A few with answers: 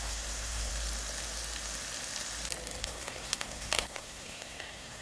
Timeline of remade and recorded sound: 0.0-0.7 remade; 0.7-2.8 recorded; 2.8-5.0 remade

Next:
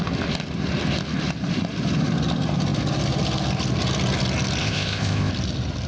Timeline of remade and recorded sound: 0.0-4.6 recorded; 4.6-5.3 remade; 5.3-5.9 recorded

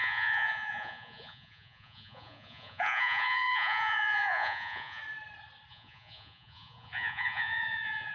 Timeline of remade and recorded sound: 0.0-5.0 remade; 5.0-5.7 recorded; 5.7-8.1 remade

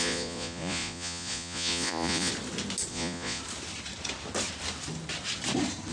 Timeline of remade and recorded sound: 0.0-2.3 remade; 2.3-2.9 recorded; 2.9-3.4 remade; 3.4-5.9 recorded

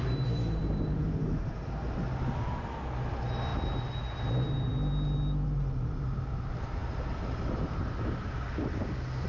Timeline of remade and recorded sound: 0.0-0.6 recorded; 0.6-1.6 remade; 1.6-9.3 recorded

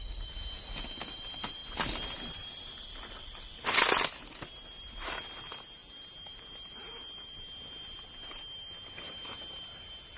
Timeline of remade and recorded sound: 0.0-10.2 recorded